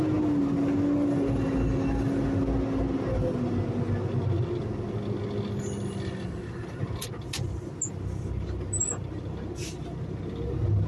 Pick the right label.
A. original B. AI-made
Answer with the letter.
A